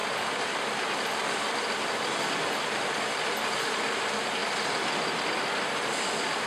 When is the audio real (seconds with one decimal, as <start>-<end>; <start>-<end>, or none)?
0.0-6.5